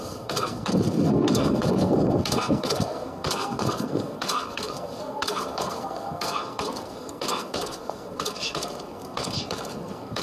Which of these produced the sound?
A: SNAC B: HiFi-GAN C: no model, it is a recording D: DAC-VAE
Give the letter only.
A